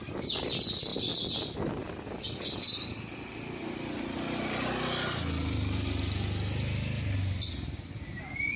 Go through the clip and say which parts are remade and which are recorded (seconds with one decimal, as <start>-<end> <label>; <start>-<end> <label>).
0.0-8.6 recorded